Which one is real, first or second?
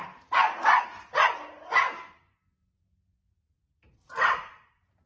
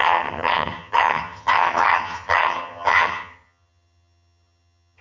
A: first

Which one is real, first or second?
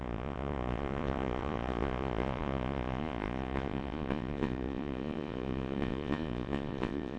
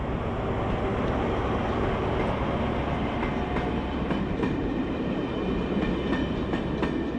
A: second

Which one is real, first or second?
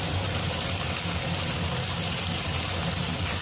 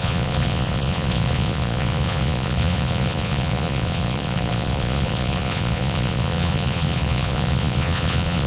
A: first